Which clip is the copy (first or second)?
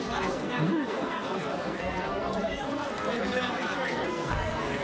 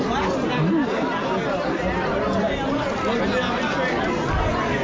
first